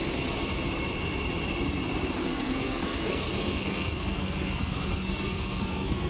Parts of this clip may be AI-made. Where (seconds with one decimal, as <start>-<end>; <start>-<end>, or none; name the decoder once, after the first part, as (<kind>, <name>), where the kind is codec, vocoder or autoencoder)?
2.2-6.1 (codec, SNAC)